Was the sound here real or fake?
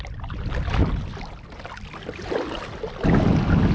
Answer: real